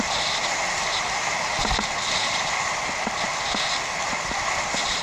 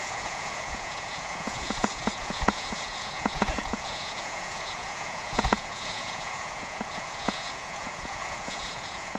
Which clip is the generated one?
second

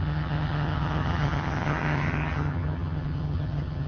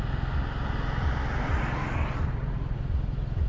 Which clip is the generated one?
first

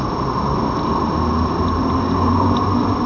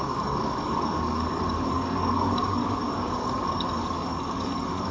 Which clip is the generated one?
second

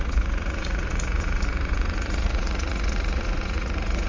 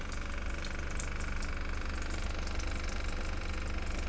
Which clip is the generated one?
first